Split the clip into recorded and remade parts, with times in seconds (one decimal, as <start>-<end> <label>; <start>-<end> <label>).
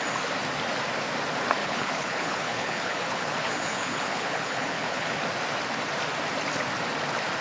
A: 0.0-1.6 recorded; 1.6-5.2 remade; 5.2-7.4 recorded